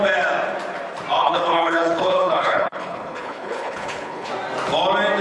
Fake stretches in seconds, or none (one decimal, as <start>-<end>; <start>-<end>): 1.2-4.3